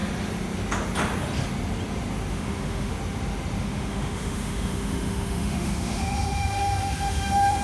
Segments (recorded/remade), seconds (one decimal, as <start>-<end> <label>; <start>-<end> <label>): 0.0-2.3 recorded; 2.3-2.9 remade; 2.9-3.6 recorded; 3.6-7.6 remade